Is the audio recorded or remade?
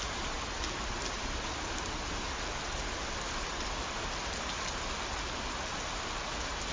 recorded